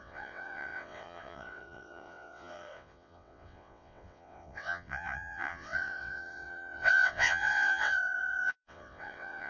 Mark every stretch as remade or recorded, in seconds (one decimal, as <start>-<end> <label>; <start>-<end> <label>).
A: 0.0-9.5 remade